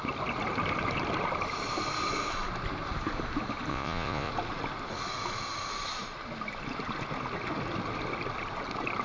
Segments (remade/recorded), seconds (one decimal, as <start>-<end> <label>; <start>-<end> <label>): 0.0-3.7 recorded; 3.7-4.3 remade; 4.3-9.0 recorded